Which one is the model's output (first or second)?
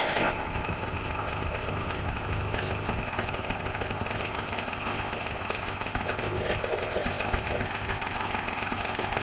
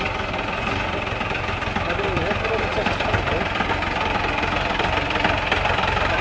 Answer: first